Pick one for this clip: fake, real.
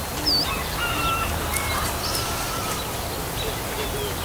real